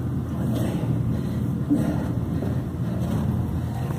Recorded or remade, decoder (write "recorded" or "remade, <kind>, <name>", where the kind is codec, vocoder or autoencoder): remade, vocoder, BigVGAN v2